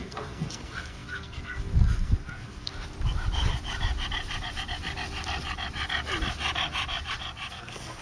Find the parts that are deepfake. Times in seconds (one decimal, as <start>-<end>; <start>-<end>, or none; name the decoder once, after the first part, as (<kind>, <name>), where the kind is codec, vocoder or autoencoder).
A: 0.0-2.7 (codec, SNAC); 7.5-8.0